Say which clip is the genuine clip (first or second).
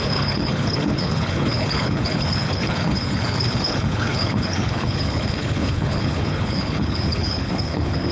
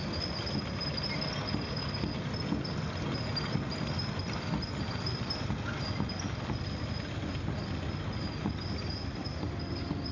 second